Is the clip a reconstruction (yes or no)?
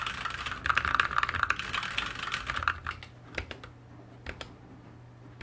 no